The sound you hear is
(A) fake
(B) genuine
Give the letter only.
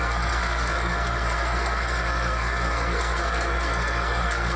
A